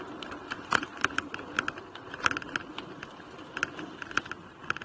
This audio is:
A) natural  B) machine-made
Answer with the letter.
A